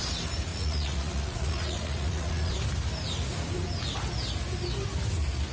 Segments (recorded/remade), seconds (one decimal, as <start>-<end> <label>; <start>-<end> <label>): 0.0-0.5 recorded; 0.5-2.5 remade; 2.5-5.5 recorded